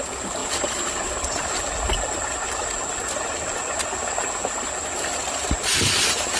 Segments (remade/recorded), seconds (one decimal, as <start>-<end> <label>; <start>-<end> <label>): 0.0-6.4 recorded